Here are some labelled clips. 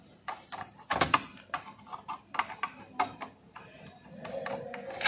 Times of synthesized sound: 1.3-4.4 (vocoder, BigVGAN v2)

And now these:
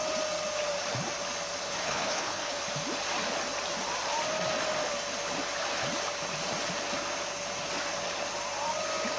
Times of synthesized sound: 1.6-2.6 (codec, HILCodec)

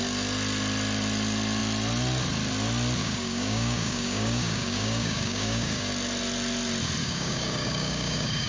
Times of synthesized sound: 3.0-5.9 (codec, DAC); 7.0-8.5

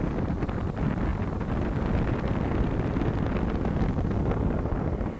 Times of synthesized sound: none

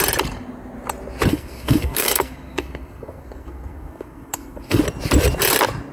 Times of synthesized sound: 1.3-4.8 (codec, SNAC)

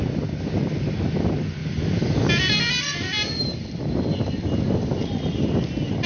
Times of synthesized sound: 1.6-3.8 (vocoder, BigVGAN v2)

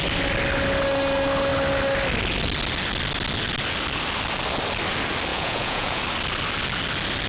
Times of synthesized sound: 5.3-6.0 (vocoder, Vocos)